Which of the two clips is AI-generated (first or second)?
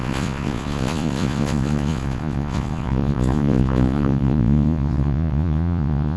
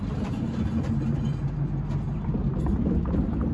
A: first